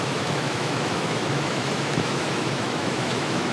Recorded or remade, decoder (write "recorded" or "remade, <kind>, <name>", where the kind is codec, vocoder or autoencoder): remade, autoencoder, DAC-VAE